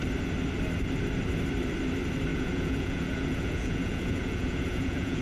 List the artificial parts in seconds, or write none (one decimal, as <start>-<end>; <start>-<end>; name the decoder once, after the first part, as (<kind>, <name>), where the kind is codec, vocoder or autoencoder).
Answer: 2.3-5.2 (vocoder, Vocos)